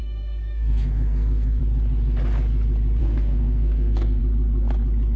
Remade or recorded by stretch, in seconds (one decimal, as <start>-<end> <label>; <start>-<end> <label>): 0.0-1.6 remade; 1.6-3.0 recorded; 3.0-4.2 remade; 4.2-5.2 recorded